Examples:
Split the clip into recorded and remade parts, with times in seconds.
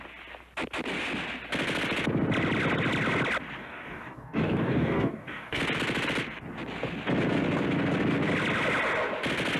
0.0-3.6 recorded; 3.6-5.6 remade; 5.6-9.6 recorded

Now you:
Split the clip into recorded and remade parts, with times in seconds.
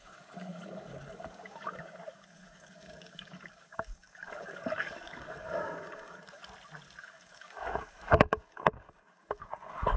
0.0-6.4 remade; 6.4-7.0 recorded; 7.0-10.0 remade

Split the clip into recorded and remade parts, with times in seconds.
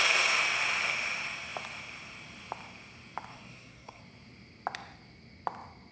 0.0-3.3 recorded; 3.3-4.0 remade; 4.0-5.9 recorded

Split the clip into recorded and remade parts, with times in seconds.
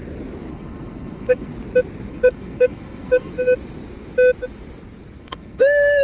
0.0-0.5 recorded; 0.5-1.5 remade; 1.5-2.1 recorded; 2.1-3.3 remade; 3.3-5.2 recorded; 5.2-6.0 remade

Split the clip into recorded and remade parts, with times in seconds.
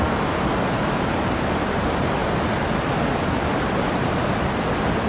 0.0-5.1 recorded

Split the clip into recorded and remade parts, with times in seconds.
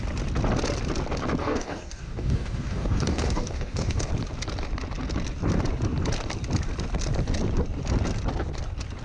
0.0-1.4 recorded; 1.4-4.1 remade; 4.1-9.0 recorded